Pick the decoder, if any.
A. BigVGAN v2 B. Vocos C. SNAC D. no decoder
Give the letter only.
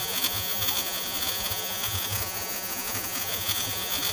B